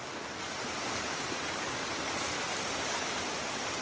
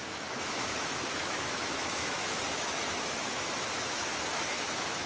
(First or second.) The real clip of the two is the first